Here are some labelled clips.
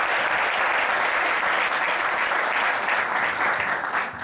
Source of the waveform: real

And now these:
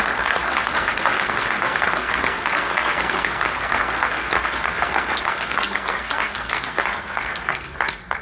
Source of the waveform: fake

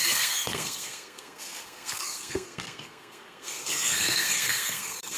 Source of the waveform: fake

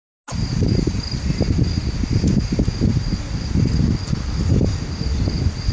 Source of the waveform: real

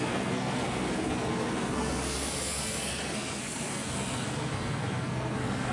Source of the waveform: fake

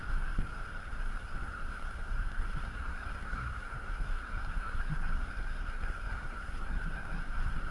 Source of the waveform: fake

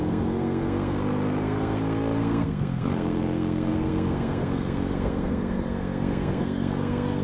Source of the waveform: fake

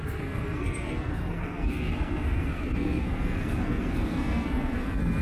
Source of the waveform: fake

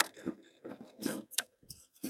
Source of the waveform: fake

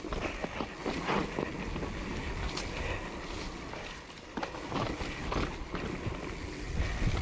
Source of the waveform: real